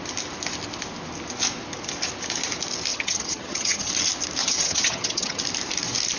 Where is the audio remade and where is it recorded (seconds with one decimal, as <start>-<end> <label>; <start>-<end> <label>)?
0.0-2.9 recorded; 2.9-3.9 remade; 3.9-4.4 recorded; 4.4-5.4 remade; 5.4-6.2 recorded